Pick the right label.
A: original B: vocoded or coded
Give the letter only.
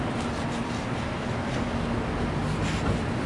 A